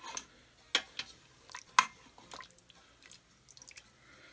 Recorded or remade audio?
recorded